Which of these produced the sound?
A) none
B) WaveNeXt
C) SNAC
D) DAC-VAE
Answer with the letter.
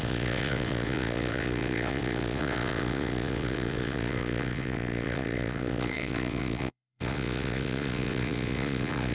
B